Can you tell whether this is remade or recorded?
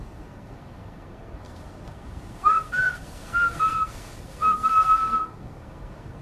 remade